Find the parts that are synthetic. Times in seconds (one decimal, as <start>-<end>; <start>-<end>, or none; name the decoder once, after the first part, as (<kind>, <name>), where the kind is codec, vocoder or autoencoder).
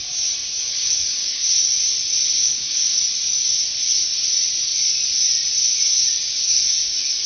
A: 0.6-1.4 (codec, DAC); 2.4-3.0; 6.4-7.3